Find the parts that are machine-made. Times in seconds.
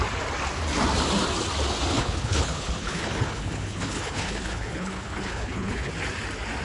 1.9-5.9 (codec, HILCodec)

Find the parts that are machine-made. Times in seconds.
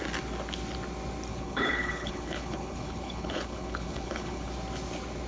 1.3-4.5 (codec, HILCodec)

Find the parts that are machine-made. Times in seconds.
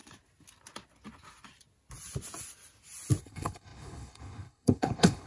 3.2-5.3 (codec, HILCodec)